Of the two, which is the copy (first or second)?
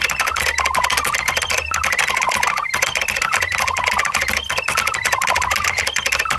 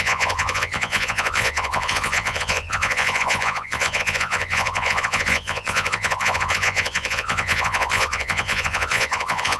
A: second